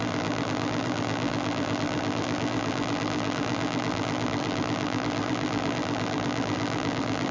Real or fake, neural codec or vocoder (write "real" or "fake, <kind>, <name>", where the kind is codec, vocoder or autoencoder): fake, vocoder, BigVGAN v2